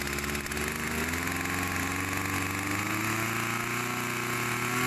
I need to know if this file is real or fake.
real